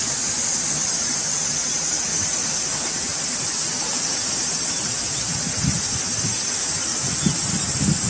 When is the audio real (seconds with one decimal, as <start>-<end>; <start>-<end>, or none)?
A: 1.2-2.1; 3.7-8.1